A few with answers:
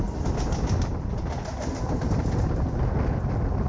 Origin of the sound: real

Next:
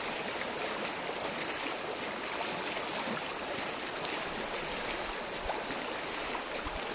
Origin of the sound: real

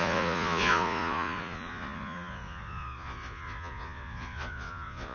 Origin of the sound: fake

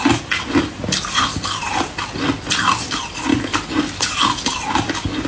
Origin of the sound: real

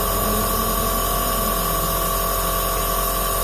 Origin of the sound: real